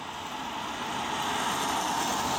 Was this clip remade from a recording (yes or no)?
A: no